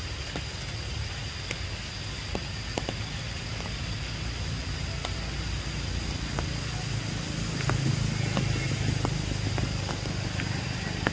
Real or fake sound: real